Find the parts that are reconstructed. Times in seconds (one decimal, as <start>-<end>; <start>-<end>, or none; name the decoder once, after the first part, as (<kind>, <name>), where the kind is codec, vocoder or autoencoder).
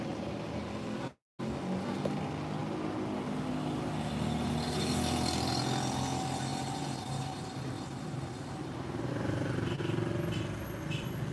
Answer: 6.5-9.1 (vocoder, BigVGAN v2)